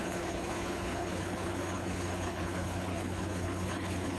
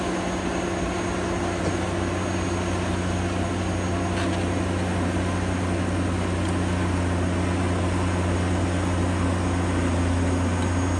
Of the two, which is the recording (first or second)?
second